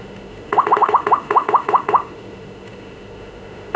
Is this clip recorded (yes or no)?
no